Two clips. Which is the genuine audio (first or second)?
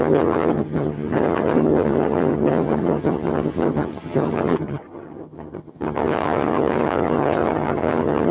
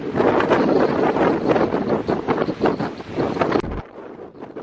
second